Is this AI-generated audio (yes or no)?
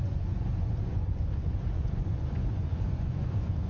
yes